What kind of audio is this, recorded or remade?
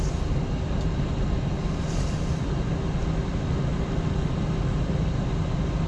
recorded